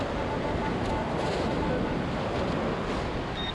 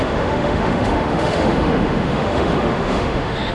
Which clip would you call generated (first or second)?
second